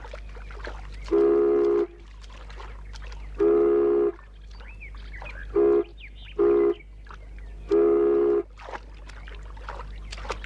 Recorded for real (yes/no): yes